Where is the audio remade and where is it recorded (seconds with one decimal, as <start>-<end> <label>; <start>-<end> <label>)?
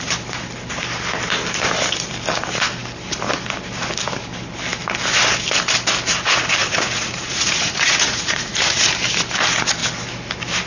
0.0-6.6 recorded; 6.6-8.9 remade; 8.9-10.7 recorded